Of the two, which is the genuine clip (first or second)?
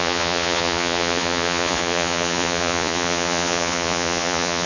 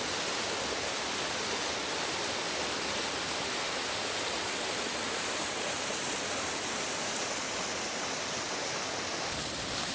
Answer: second